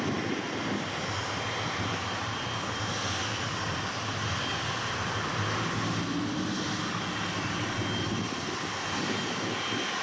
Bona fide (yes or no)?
yes